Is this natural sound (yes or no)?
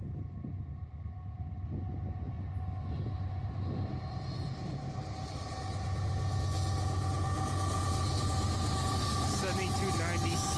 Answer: yes